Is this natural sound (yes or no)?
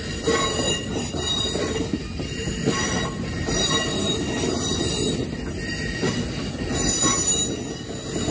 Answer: yes